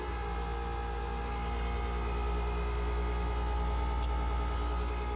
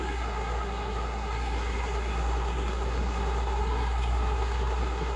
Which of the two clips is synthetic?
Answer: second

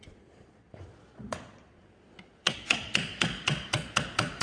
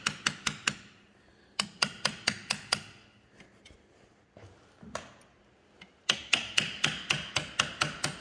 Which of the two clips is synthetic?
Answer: first